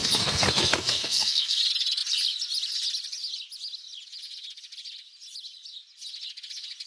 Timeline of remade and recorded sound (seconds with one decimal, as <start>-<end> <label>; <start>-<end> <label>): 0.0-1.6 remade; 1.6-6.9 recorded